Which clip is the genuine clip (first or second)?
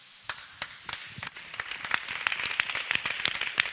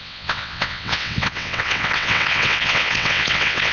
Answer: first